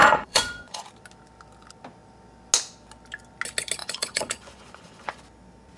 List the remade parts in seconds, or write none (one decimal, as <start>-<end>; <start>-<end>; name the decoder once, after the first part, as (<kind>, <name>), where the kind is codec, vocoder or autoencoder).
0.0-0.9 (vocoder, Vocos); 3.8-5.2